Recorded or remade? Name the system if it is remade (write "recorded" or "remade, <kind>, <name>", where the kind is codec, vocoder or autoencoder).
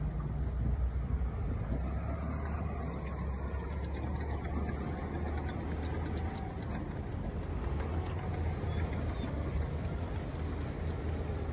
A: recorded